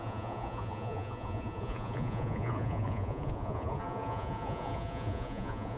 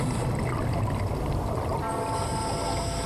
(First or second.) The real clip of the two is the second